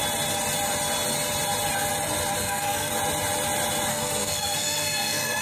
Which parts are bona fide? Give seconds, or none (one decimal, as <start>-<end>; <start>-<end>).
0.0-2.4; 2.9-3.9